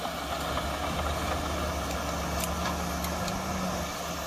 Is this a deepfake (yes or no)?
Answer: no